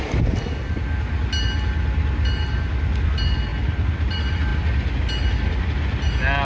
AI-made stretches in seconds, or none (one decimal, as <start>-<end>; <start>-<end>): none